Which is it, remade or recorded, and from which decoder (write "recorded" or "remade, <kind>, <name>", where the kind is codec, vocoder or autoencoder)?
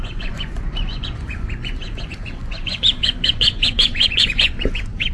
remade, vocoder, Vocos